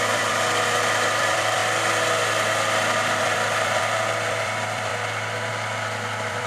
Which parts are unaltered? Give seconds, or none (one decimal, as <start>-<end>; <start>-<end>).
1.6-3.2; 4.9-5.5